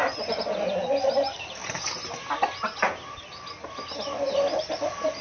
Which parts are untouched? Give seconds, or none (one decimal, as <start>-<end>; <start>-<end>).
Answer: 0.0-5.2